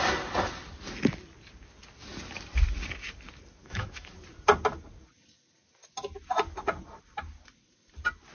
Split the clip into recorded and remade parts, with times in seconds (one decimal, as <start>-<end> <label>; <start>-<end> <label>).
0.0-3.6 recorded; 3.6-4.1 remade; 4.1-8.3 recorded